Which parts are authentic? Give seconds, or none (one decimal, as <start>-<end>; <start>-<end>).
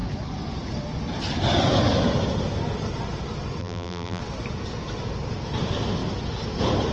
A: 0.0-3.6; 4.2-6.9